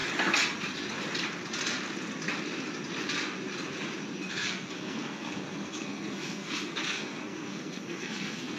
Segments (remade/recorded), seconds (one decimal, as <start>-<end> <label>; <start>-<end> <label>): 0.0-4.3 recorded; 4.3-8.6 remade